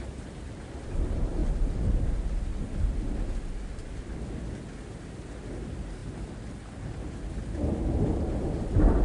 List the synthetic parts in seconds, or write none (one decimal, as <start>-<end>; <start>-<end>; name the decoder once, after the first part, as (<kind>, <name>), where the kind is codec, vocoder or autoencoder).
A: none